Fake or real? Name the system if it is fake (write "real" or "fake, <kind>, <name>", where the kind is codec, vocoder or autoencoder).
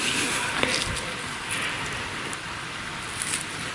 real